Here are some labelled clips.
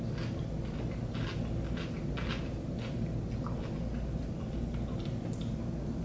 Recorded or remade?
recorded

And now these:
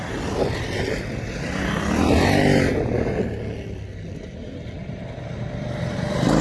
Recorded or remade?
recorded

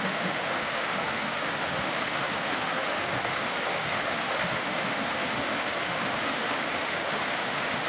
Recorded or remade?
remade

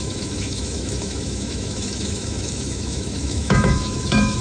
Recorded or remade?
remade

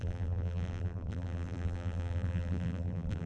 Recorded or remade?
remade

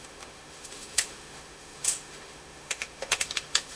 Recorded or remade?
remade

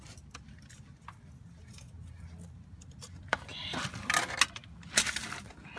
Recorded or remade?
recorded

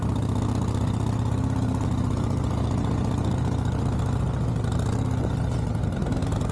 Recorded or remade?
recorded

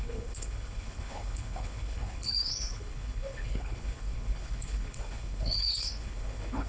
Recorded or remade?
remade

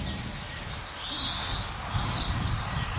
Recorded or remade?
recorded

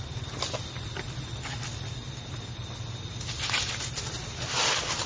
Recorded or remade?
recorded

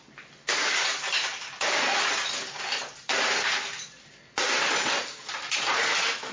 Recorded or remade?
recorded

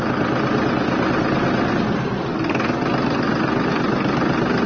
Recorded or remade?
recorded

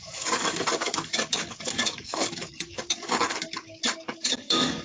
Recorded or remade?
remade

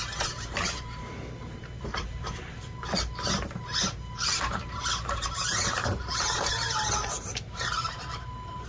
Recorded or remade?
remade